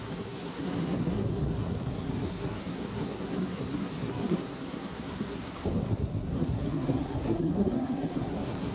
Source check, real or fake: fake